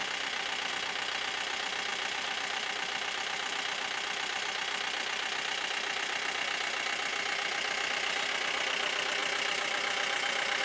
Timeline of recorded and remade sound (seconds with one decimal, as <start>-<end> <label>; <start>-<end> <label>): 0.0-1.9 recorded; 1.9-3.2 remade; 3.2-10.6 recorded